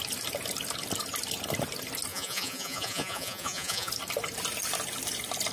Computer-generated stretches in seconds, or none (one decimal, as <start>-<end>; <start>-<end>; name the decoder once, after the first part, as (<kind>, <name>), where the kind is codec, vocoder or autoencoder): 2.1-3.9 (vocoder, Vocos)